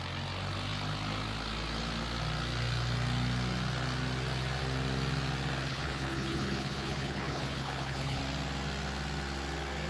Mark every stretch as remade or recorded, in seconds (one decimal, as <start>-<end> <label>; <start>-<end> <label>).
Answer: 0.0-5.7 recorded; 5.7-8.2 remade; 8.2-9.9 recorded